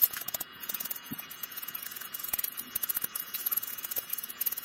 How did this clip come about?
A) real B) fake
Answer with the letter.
B